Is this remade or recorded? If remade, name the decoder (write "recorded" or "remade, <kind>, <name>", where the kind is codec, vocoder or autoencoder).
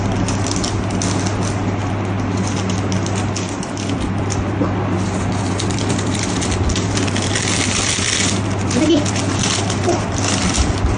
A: recorded